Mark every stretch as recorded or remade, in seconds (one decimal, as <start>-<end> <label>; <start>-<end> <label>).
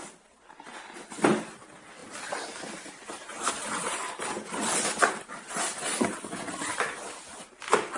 0.0-8.0 recorded